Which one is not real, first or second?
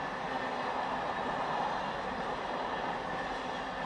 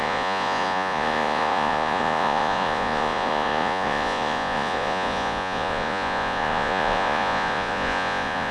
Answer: second